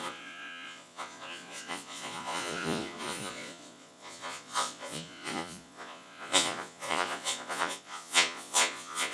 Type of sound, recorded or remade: remade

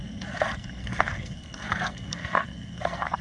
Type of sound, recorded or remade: remade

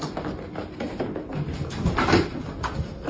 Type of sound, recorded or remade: recorded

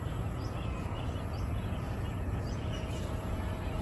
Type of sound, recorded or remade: remade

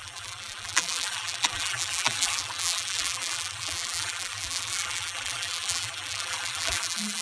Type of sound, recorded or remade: remade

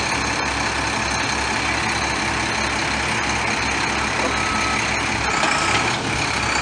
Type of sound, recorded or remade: recorded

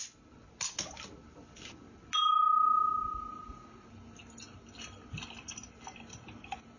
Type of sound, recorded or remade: recorded